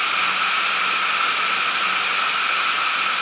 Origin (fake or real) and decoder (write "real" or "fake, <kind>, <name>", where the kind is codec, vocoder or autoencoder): real